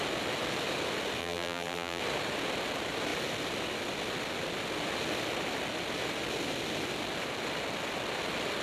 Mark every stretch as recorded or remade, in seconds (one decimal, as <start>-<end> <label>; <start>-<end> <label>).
0.0-1.2 recorded; 1.2-2.0 remade; 2.0-8.6 recorded